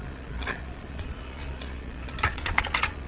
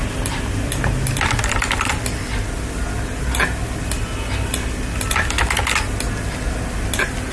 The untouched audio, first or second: second